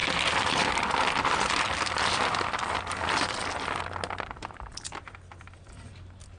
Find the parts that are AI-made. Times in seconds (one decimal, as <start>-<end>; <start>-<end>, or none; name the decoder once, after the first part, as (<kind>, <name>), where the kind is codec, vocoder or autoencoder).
0.0-3.8 (vocoder, BigVGAN v2); 4.7-5.9